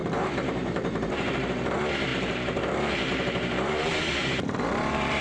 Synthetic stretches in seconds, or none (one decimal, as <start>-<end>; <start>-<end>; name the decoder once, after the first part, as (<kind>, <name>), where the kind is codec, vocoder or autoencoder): 0.0-1.6 (vocoder, BigVGAN v2); 2.1-5.2